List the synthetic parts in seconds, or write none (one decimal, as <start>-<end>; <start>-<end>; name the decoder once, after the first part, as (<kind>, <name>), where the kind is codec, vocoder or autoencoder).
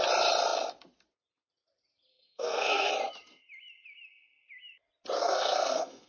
2.1-2.9 (codec, SNAC); 5.2-6.1